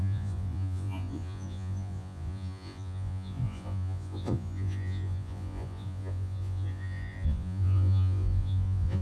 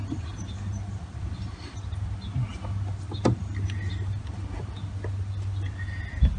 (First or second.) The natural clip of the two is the second